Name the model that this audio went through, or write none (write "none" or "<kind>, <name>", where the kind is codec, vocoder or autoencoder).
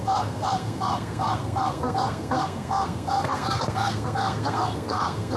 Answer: codec, SNAC